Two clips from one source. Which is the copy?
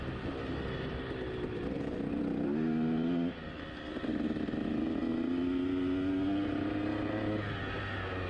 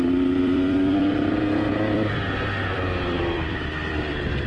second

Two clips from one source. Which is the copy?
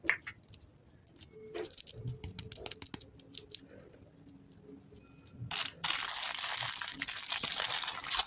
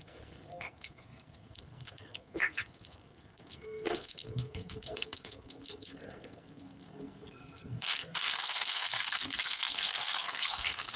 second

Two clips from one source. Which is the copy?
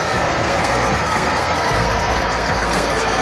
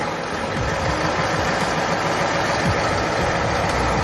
first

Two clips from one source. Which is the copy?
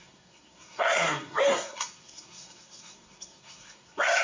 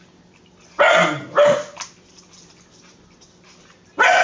first